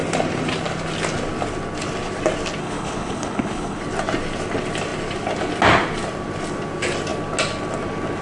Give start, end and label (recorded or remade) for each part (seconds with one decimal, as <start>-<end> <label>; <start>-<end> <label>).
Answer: 0.0-2.6 recorded; 2.6-3.8 remade; 3.8-8.2 recorded